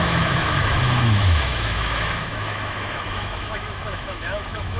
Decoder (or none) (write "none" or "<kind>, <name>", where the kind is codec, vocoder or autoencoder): autoencoder, DAC-VAE